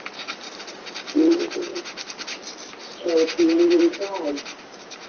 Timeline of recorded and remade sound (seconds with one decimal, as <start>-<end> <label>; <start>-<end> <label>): 0.0-1.7 remade; 1.7-2.7 recorded; 2.7-5.1 remade

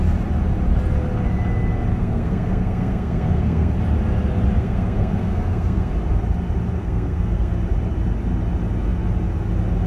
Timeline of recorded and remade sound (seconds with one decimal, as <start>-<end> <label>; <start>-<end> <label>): 0.0-1.9 recorded; 1.9-3.8 remade; 3.8-4.6 recorded; 4.6-5.9 remade; 5.9-6.8 recorded; 6.8-7.5 remade; 7.5-9.9 recorded

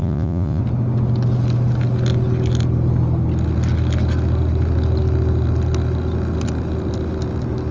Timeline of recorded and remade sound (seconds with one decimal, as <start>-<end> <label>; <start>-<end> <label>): 0.0-0.6 remade; 0.6-7.7 recorded

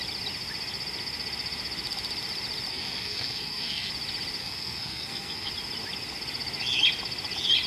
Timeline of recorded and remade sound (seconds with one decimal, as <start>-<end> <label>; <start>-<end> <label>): 0.0-2.7 recorded; 2.7-3.9 remade; 3.9-4.4 recorded; 4.4-5.5 remade; 5.5-7.7 recorded

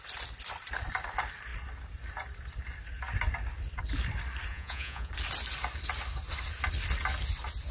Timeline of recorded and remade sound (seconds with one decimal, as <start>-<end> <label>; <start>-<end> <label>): 0.0-4.5 recorded; 4.5-5.1 remade; 5.1-7.7 recorded

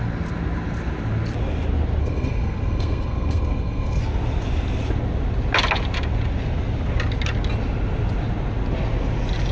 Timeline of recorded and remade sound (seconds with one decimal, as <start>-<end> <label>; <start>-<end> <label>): 0.0-2.0 recorded; 2.0-4.0 remade; 4.0-9.5 recorded

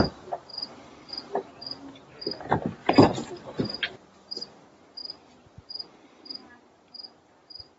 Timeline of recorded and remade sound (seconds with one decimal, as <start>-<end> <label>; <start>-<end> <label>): 0.0-0.5 recorded; 0.5-1.1 remade; 1.1-7.8 recorded

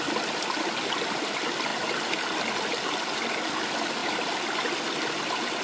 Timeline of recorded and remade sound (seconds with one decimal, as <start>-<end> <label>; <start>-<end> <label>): 0.0-5.6 recorded